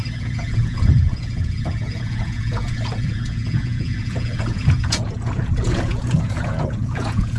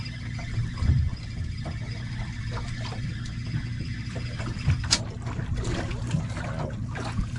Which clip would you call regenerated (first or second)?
first